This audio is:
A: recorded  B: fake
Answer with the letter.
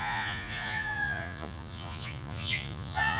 B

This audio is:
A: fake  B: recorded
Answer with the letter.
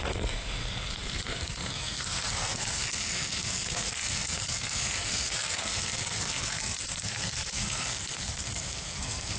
A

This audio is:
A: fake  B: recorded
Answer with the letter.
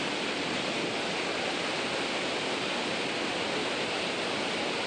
B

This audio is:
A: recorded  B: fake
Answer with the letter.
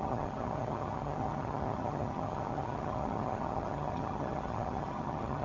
B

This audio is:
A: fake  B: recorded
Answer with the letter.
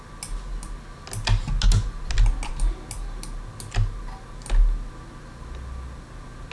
B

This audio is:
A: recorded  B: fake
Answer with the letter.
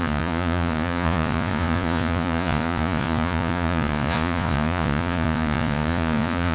B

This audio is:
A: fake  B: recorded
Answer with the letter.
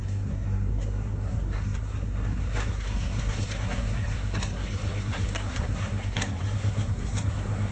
A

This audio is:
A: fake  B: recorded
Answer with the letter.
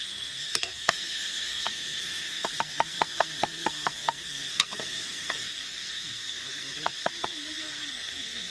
A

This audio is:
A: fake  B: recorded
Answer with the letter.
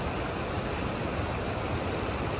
B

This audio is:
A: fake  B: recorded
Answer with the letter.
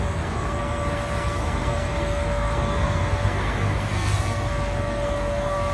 A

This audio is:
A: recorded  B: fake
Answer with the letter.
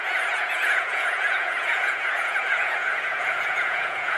B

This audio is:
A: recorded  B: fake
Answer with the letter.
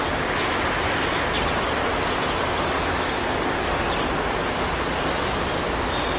A